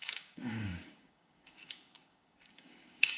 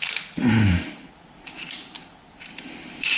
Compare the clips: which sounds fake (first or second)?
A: first